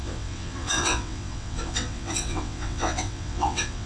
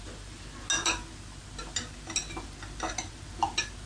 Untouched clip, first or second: second